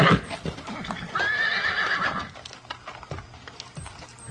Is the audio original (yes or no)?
yes